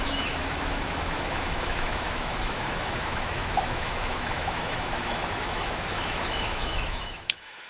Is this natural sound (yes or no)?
no